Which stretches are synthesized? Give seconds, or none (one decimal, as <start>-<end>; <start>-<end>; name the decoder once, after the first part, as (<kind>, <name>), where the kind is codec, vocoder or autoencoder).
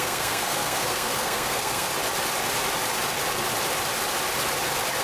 0.0-1.9 (codec, SNAC)